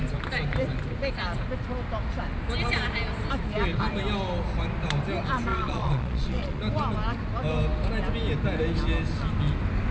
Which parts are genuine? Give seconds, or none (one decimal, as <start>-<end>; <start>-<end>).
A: 0.0-5.5; 6.6-9.9